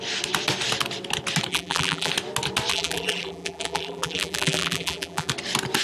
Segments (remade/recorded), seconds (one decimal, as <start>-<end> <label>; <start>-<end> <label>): 0.0-1.5 recorded; 1.5-2.1 remade; 2.1-2.7 recorded; 2.7-5.3 remade; 5.3-5.8 recorded